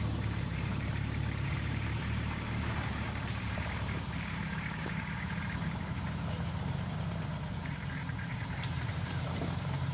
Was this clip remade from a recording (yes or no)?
yes